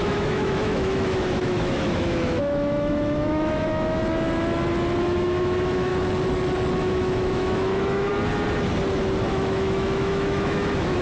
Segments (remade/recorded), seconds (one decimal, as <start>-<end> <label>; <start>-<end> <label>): 0.0-4.0 remade; 4.0-5.0 recorded; 5.0-5.9 remade; 5.9-6.8 recorded; 6.8-8.1 remade; 8.1-9.3 recorded; 9.3-11.0 remade